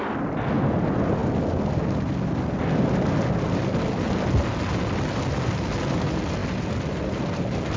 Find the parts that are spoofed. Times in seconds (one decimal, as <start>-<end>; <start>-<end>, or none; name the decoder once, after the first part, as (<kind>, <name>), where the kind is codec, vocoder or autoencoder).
none